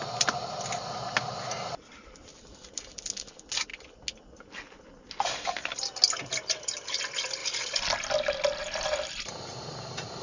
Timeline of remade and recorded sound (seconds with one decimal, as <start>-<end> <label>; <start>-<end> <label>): 0.0-10.2 recorded